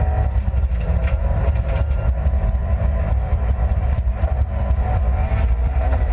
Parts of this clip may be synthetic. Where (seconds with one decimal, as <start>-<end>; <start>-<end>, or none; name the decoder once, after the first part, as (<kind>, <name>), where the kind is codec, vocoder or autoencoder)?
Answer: 2.6-6.1 (vocoder, BigVGAN v2)